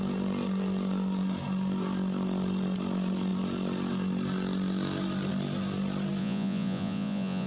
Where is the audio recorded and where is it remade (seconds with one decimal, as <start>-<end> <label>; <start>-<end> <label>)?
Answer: 0.0-6.2 recorded; 6.2-7.5 remade